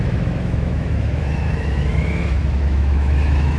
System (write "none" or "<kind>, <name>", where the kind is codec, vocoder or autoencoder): autoencoder, DAC-VAE